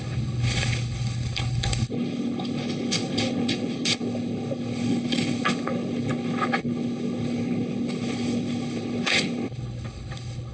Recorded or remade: remade